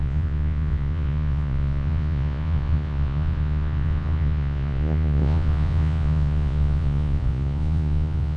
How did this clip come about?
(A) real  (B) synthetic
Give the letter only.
B